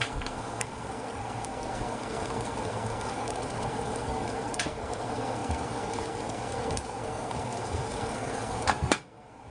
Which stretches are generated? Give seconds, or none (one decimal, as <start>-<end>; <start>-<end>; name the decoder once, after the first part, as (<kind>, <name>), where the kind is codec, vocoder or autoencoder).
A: 0.0-9.5 (codec, SNAC)